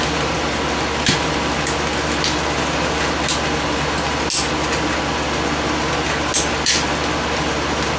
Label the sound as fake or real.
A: real